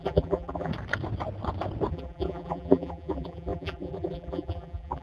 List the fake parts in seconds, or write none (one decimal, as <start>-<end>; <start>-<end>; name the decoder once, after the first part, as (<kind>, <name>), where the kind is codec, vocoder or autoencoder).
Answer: 0.0-0.7 (vocoder, BigVGAN v2); 1.9-5.0